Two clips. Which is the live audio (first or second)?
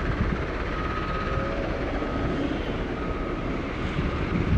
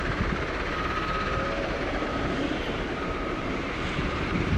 first